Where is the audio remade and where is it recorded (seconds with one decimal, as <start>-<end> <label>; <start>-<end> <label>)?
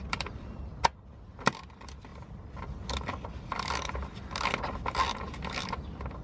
0.0-6.2 recorded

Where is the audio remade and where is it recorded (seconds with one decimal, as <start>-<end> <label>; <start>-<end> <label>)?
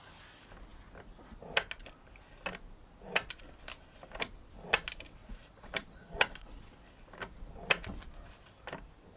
0.0-5.2 recorded; 5.2-6.8 remade; 6.8-9.2 recorded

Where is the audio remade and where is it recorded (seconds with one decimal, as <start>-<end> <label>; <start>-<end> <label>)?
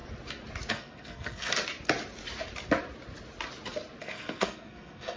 0.0-0.7 recorded; 0.7-1.5 remade; 1.5-4.0 recorded; 4.0-5.2 remade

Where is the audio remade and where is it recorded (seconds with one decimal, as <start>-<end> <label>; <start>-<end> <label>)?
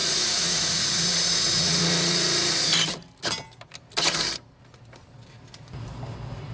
0.0-2.7 remade; 2.7-6.5 recorded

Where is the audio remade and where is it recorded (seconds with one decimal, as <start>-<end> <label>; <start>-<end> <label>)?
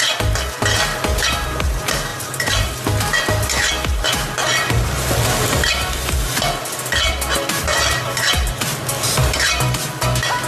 0.0-2.1 recorded; 2.1-2.7 remade; 2.7-9.2 recorded; 9.2-9.9 remade; 9.9-10.5 recorded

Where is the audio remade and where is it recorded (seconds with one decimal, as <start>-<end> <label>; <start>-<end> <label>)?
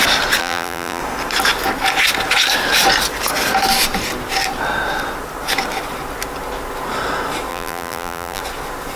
0.0-0.4 recorded; 0.4-1.0 remade; 1.0-7.5 recorded; 7.5-8.4 remade; 8.4-9.0 recorded